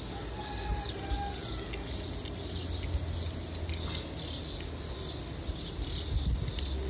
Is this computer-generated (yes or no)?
no